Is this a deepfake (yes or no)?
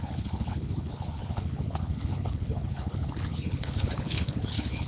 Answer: yes